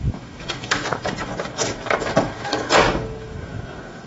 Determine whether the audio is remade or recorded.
remade